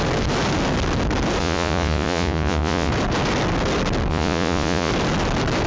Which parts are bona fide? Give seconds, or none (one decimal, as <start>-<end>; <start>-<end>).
0.0-1.4; 2.9-4.1; 4.9-5.7